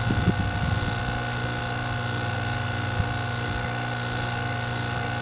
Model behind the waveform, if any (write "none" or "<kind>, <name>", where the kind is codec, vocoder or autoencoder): none